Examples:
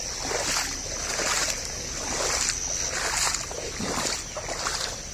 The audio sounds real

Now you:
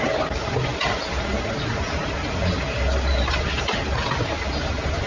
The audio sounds real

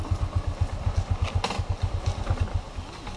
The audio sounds real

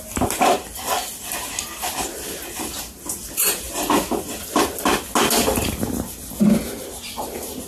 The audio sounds real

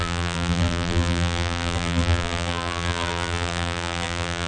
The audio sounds fake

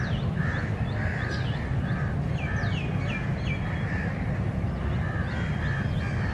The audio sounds real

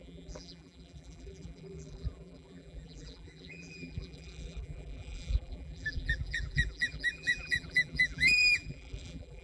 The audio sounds fake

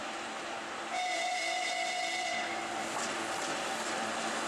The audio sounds fake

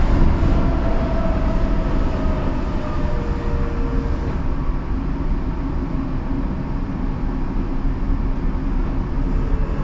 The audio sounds real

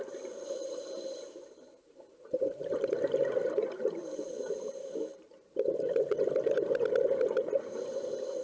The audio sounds fake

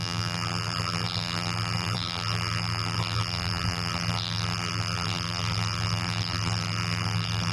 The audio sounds fake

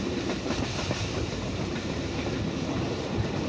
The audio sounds fake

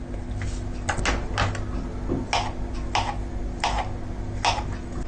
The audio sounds real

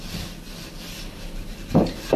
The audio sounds fake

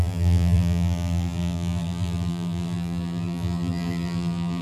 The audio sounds fake